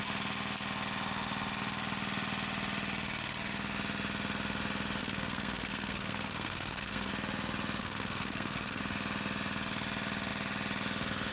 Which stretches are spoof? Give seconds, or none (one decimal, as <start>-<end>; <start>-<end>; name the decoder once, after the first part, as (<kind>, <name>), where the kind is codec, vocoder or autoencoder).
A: 5.0-7.1 (codec, SNAC); 7.8-8.8